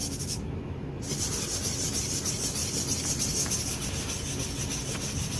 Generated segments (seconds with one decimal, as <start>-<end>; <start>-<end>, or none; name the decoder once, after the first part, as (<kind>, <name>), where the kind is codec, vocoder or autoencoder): 0.0-1.0 (autoencoder, DAC-VAE)